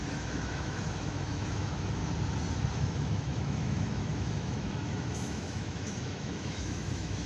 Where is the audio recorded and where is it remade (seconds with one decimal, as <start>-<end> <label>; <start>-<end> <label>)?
0.0-2.0 remade; 2.0-2.7 recorded; 2.7-7.3 remade